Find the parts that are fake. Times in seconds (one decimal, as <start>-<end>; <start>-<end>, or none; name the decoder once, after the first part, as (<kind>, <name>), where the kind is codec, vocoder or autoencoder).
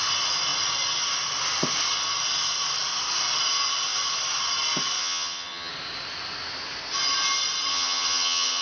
5.0-5.7 (vocoder, HiFi-GAN); 7.7-8.6